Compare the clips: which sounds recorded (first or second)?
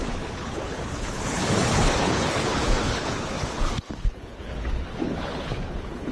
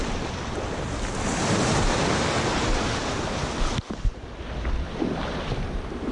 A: second